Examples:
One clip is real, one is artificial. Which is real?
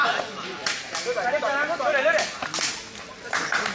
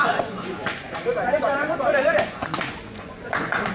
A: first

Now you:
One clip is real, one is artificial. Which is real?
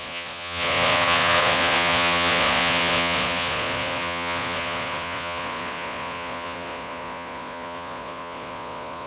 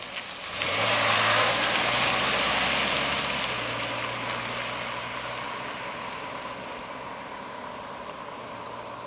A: second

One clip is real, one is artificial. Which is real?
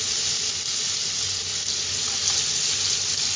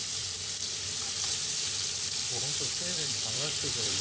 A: first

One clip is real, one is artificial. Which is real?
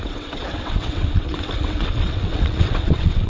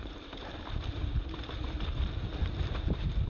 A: second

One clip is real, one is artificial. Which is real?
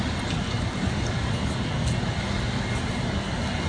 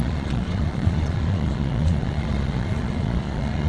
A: first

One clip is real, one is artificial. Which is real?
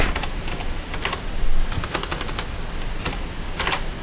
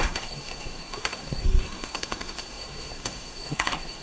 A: first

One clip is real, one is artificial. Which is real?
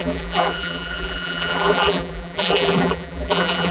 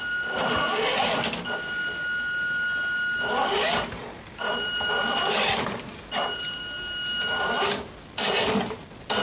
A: second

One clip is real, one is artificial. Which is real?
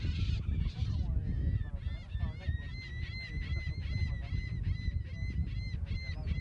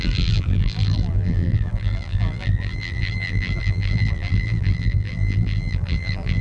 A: first